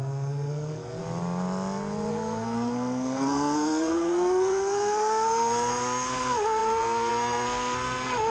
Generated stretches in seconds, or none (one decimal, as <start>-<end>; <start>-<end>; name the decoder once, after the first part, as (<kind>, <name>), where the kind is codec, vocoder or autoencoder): 0.0-1.0 (codec, SNAC); 2.1-8.3